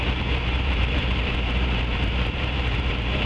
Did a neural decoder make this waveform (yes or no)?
yes